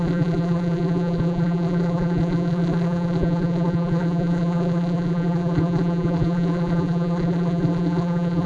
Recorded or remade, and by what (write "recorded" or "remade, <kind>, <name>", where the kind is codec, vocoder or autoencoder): remade, vocoder, BigVGAN v2